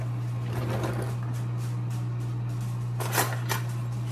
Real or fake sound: real